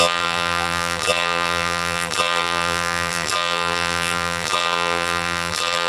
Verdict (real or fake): fake